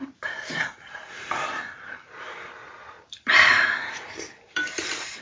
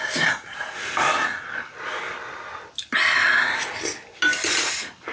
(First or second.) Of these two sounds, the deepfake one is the first